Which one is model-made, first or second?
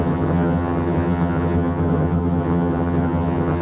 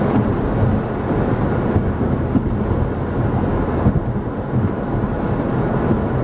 first